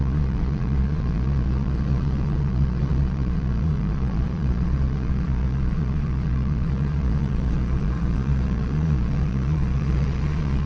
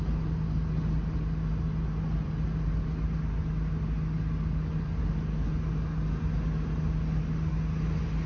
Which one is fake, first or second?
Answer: first